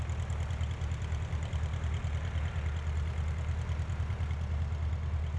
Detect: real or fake real